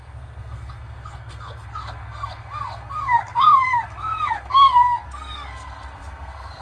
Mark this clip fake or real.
fake